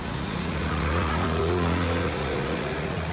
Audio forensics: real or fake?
fake